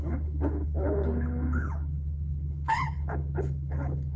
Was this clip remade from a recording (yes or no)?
yes